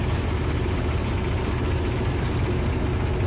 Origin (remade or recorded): recorded